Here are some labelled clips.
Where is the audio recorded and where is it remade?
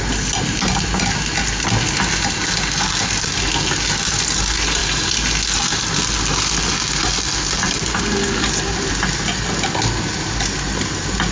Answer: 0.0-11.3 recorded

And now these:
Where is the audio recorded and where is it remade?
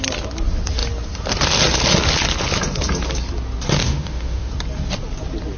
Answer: 0.0-3.8 recorded; 3.8-4.5 remade; 4.5-5.6 recorded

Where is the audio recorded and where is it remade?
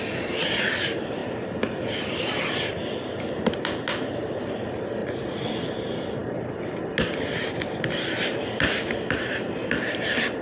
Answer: 0.0-5.0 recorded; 5.0-5.6 remade; 5.6-10.4 recorded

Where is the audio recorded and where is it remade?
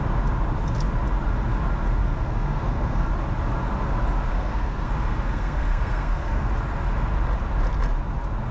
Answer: 0.0-2.0 recorded; 2.0-3.1 remade; 3.1-4.3 recorded; 4.3-6.5 remade; 6.5-8.5 recorded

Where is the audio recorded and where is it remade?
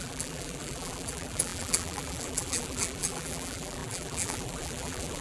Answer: 0.0-5.2 remade